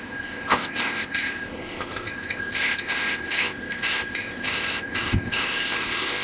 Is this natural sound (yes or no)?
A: no